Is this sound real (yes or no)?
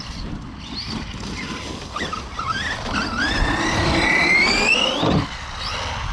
yes